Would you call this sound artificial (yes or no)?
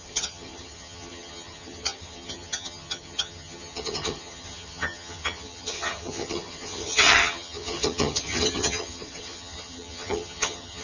yes